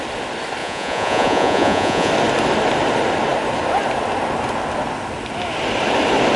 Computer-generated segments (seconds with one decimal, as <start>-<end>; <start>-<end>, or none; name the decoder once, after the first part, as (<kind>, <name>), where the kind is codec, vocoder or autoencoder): 0.6-2.1 (vocoder, Vocos)